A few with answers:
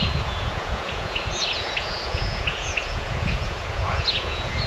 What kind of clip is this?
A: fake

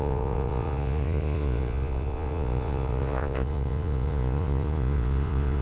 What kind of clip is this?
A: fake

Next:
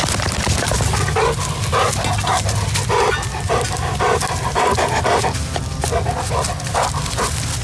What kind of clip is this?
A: real